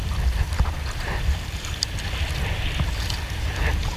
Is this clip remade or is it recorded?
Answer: recorded